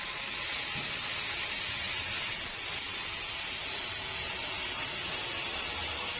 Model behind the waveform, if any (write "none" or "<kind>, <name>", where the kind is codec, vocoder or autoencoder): none